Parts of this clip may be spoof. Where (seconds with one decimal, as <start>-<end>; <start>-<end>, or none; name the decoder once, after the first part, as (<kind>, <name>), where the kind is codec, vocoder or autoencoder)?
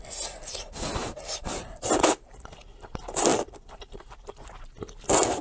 1.0-2.6 (vocoder, BigVGAN v2); 3.3-4.3